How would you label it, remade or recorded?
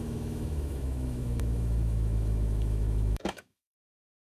remade